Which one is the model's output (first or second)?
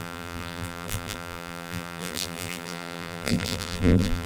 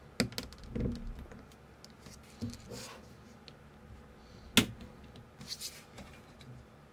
first